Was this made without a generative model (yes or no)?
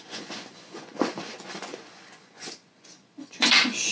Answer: no